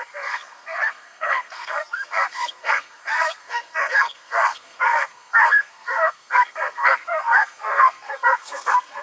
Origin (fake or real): fake